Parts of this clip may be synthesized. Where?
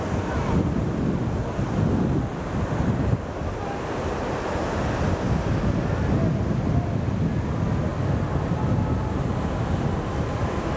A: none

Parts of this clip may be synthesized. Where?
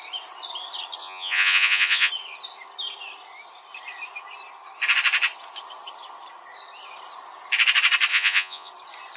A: 1.0-2.1 (vocoder, Vocos); 8.1-8.7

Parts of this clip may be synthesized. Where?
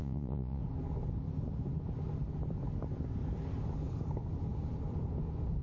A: 0.0-0.6 (vocoder, Vocos)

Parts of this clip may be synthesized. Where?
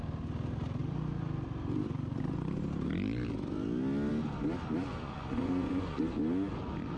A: 4.9-6.0 (vocoder, Vocos)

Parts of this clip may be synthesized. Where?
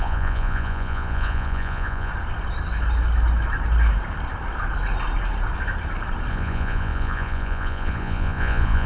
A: 0.0-2.1 (vocoder, Vocos); 6.3-8.9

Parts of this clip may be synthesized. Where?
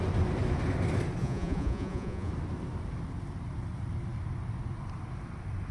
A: 1.2-2.3 (vocoder, Vocos)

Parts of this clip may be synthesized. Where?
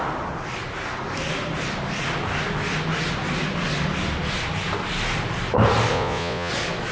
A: 5.9-6.5 (vocoder, Vocos)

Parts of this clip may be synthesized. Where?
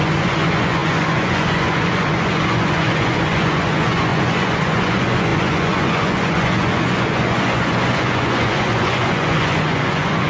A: 0.0-10.3 (vocoder, Vocos)